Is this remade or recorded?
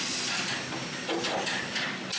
recorded